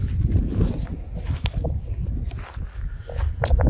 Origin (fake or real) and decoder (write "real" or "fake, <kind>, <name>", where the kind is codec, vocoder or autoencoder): real